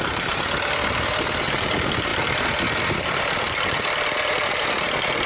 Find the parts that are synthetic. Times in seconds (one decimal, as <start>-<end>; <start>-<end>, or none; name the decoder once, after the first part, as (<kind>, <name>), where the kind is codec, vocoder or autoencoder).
none